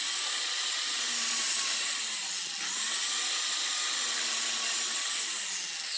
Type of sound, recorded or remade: recorded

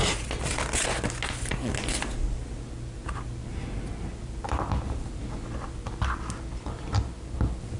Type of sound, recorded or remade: recorded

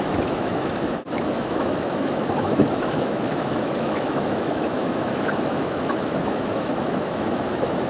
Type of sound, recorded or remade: remade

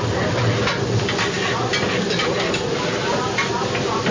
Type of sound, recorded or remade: recorded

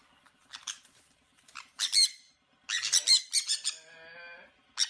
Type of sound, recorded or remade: recorded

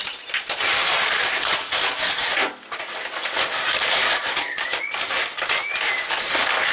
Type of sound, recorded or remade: recorded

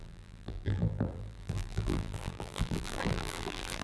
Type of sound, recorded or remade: remade